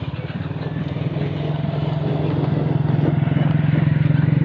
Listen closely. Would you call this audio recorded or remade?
recorded